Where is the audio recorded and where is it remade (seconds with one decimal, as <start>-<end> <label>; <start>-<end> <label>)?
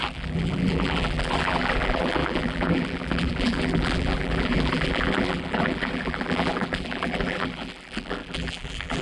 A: 0.0-9.0 remade